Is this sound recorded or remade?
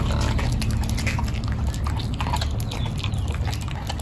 recorded